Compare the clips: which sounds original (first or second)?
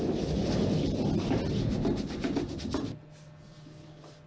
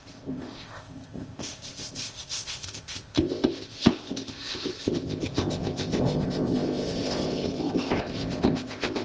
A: first